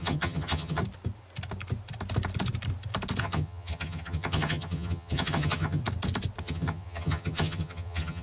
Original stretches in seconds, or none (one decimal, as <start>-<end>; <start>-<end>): 0.8-3.2; 5.8-6.4